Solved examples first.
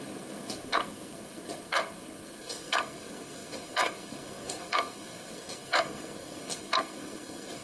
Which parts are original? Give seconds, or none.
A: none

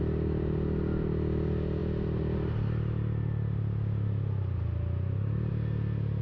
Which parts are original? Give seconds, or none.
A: 0.0-6.2

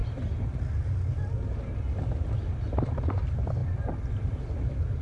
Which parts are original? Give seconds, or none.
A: 0.0-3.6; 4.4-5.0

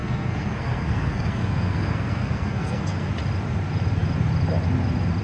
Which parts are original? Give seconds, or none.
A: 3.1-5.2

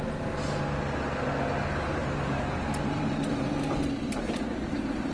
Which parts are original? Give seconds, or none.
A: 0.0-2.0

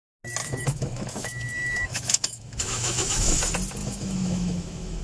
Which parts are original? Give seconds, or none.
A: 0.0-0.4; 3.4-3.8

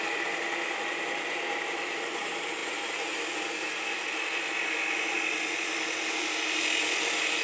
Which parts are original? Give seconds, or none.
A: 0.0-7.4

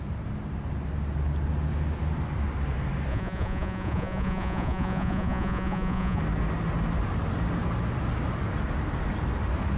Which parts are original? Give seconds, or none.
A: 0.0-3.1; 6.2-9.8